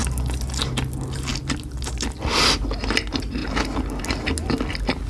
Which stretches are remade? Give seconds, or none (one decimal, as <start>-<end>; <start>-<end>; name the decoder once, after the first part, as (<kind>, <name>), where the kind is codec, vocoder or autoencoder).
none